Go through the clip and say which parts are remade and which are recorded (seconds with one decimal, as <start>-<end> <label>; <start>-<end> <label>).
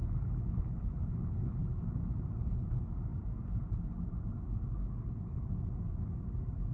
0.0-2.0 remade; 2.0-4.8 recorded; 4.8-5.5 remade; 5.5-6.7 recorded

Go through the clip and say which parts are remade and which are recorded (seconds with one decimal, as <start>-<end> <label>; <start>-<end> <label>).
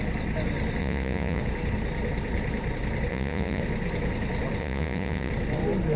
0.0-0.8 recorded; 0.8-1.4 remade; 1.4-3.1 recorded; 3.1-3.6 remade; 3.6-4.6 recorded; 4.6-5.3 remade; 5.3-6.0 recorded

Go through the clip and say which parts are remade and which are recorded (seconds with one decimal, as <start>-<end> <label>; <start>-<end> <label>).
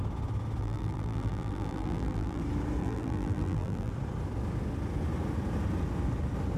0.0-0.6 recorded; 0.6-2.4 remade; 2.4-2.8 recorded; 2.8-3.9 remade; 3.9-6.6 recorded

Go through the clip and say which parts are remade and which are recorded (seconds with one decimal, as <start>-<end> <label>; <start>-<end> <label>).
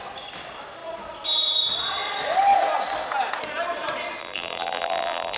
0.0-4.2 recorded; 4.2-5.4 remade